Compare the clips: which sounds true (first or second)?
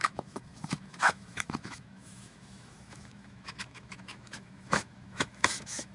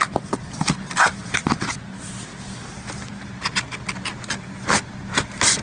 second